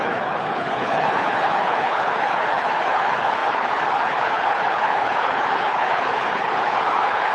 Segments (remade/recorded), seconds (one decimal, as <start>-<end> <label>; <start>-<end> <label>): 0.0-7.3 remade